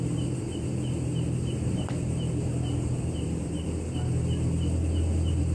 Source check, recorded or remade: recorded